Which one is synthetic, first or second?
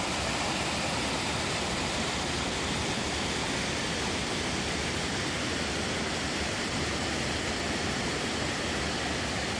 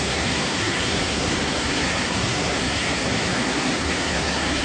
second